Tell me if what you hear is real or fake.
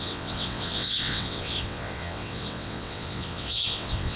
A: fake